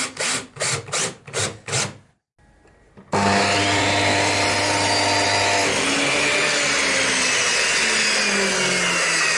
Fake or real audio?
real